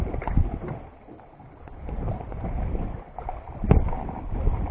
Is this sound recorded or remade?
recorded